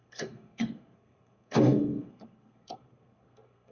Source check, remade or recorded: remade